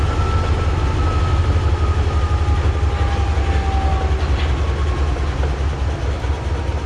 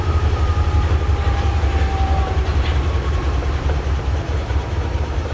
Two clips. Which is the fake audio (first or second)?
second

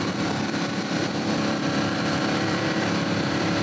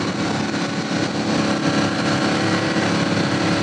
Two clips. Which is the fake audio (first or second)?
first